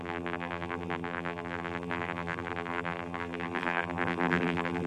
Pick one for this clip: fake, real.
fake